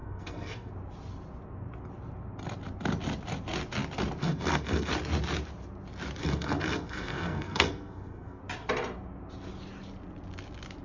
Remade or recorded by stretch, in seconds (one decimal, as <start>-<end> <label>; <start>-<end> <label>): 0.0-0.7 remade; 0.7-4.2 recorded; 4.2-4.9 remade; 4.9-6.2 recorded; 6.2-8.4 remade; 8.4-10.8 recorded